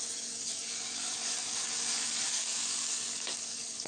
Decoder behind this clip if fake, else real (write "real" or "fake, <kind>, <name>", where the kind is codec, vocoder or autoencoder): fake, codec, DAC